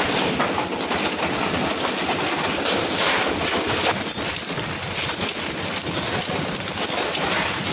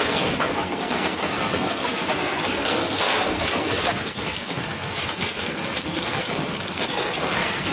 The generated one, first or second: second